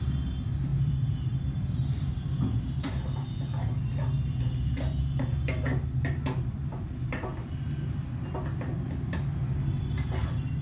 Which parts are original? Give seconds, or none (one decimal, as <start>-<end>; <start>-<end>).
0.0-0.7; 2.8-7.3; 7.9-10.6